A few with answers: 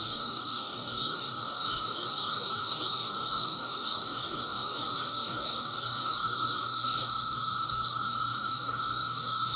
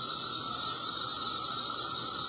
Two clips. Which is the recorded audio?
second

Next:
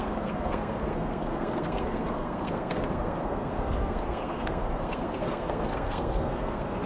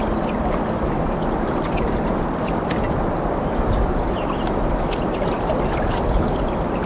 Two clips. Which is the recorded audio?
second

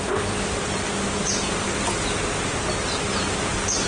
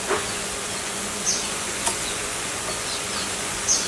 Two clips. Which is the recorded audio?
first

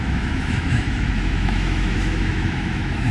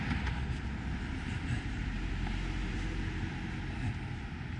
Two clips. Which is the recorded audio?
second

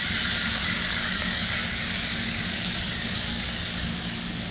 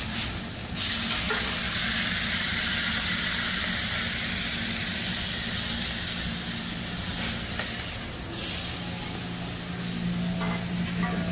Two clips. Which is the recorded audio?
second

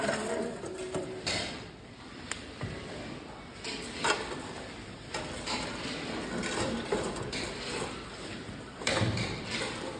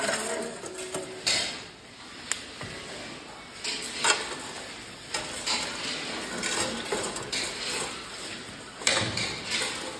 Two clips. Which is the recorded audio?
second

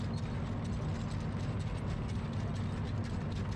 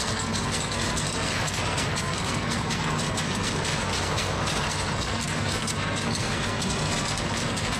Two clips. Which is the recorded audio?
first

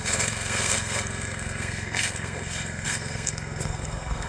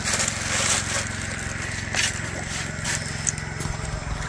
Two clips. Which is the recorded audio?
second